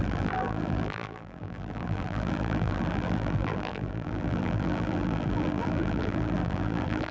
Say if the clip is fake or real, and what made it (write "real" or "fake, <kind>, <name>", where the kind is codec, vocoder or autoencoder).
fake, vocoder, BigVGAN v2